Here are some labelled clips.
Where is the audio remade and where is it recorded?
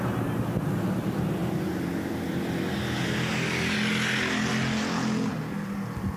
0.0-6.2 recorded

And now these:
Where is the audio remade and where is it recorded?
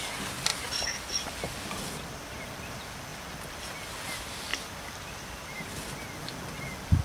0.0-0.5 recorded; 0.5-2.4 remade; 2.4-4.5 recorded; 4.5-5.9 remade; 5.9-7.0 recorded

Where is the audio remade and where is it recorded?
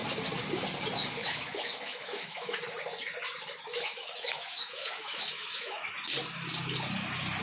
0.0-1.2 recorded; 1.2-2.6 remade; 2.6-3.7 recorded; 3.7-5.9 remade; 5.9-7.4 recorded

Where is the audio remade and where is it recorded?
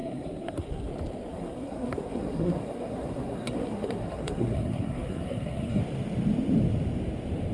0.0-0.9 remade; 0.9-1.3 recorded; 1.3-5.8 remade; 5.8-7.5 recorded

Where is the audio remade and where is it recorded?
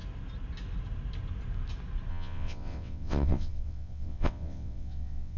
0.0-2.1 recorded; 2.1-5.4 remade